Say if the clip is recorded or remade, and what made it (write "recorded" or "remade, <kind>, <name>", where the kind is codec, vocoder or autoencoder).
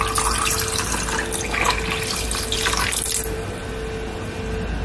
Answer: recorded